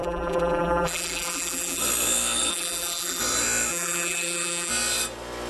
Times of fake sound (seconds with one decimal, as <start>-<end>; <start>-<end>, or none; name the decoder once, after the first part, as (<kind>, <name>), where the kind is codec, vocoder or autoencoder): 0.0-1.8 (vocoder, BigVGAN v2); 2.5-3.2; 3.7-4.7